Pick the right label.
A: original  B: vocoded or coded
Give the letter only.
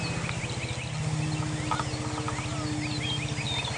A